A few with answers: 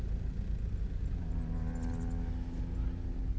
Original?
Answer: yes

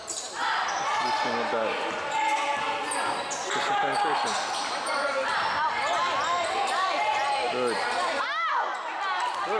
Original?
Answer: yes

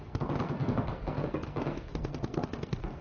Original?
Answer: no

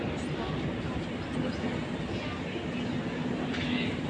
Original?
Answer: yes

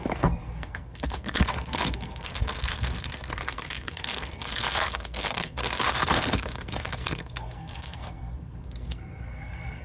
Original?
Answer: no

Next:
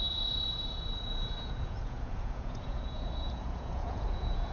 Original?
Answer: no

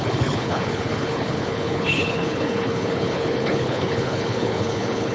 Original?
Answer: no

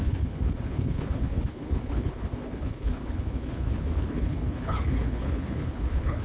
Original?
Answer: no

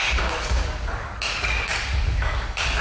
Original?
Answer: no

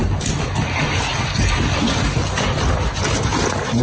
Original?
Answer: yes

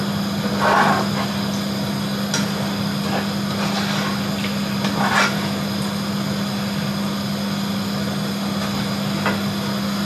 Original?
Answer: yes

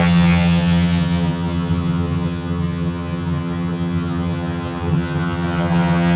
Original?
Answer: no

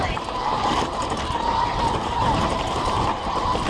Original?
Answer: no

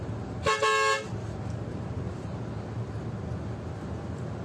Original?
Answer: yes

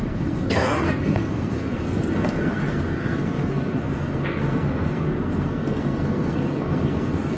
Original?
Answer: no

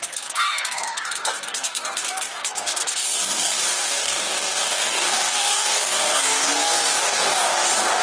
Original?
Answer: no